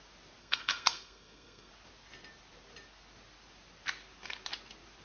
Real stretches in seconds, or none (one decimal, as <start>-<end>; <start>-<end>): 0.0-0.4; 1.7-5.0